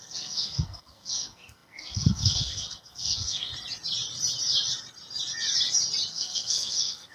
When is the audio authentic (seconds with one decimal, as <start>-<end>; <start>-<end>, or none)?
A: 3.5-6.1